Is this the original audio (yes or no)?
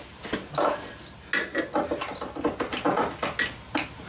yes